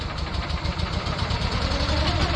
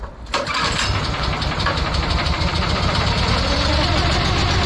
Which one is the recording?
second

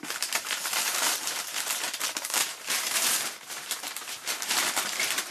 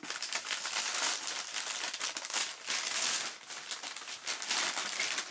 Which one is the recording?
second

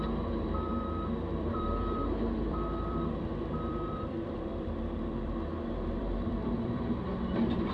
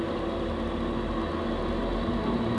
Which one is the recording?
second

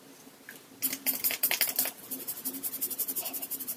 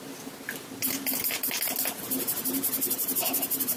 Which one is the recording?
second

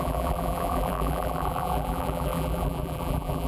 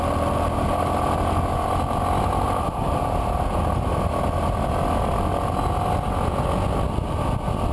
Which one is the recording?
second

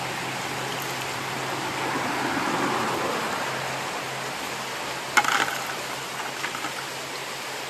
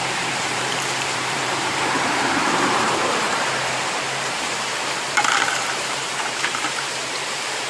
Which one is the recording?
first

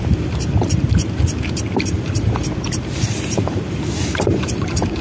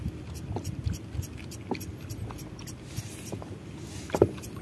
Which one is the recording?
second